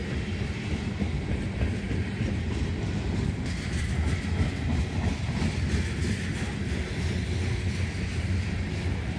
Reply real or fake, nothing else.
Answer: real